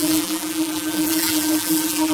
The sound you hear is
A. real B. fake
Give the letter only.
B